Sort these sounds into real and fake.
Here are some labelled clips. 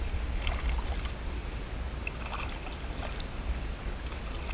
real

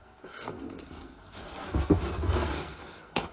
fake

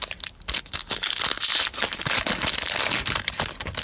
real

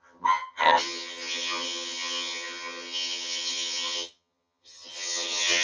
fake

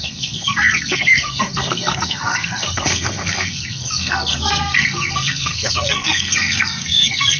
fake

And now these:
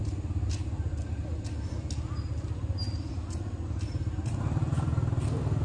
real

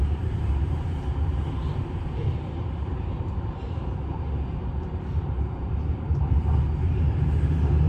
fake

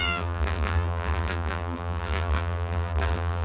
fake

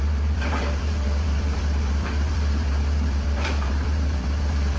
fake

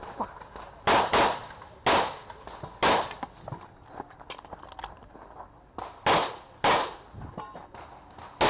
real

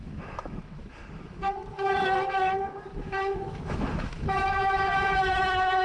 fake